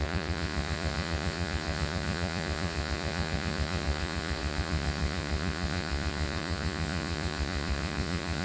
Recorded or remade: remade